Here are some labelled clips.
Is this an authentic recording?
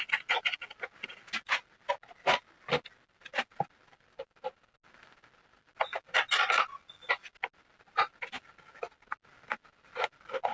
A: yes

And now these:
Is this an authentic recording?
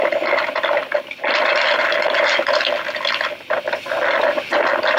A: yes